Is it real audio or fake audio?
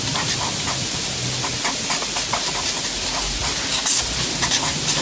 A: real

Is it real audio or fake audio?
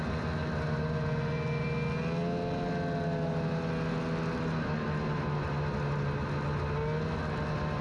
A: real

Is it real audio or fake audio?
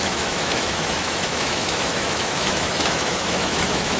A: fake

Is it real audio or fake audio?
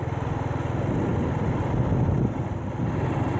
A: real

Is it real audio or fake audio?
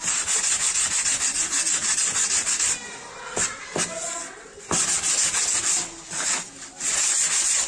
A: real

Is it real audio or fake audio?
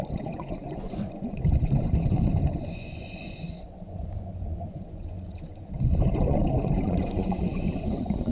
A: fake